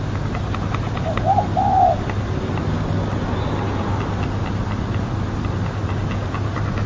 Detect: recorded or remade recorded